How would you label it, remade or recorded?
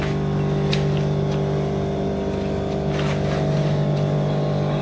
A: recorded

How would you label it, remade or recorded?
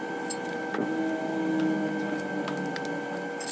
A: recorded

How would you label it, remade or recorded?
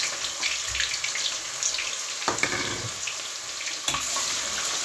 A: recorded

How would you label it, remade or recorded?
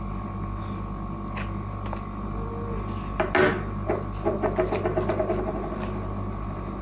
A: recorded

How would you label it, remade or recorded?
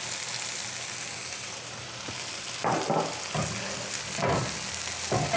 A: recorded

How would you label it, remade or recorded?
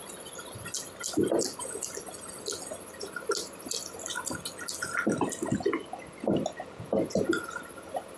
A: recorded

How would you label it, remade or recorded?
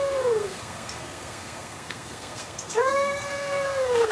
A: remade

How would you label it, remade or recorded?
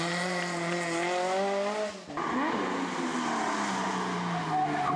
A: recorded